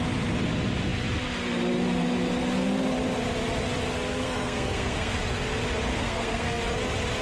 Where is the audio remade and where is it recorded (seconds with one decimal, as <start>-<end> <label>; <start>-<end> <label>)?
0.0-4.2 recorded; 4.2-5.2 remade; 5.2-5.9 recorded; 5.9-6.6 remade; 6.6-7.2 recorded